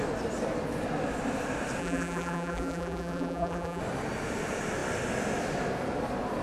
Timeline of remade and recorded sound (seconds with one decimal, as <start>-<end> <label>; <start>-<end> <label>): 0.0-1.8 recorded; 1.8-3.8 remade; 3.8-6.4 recorded